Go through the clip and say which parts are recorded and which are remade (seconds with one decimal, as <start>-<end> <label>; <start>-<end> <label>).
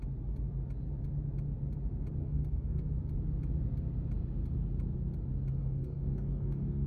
0.0-2.2 recorded; 2.2-2.9 remade; 2.9-5.6 recorded; 5.6-6.9 remade